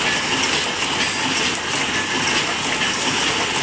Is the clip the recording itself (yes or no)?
yes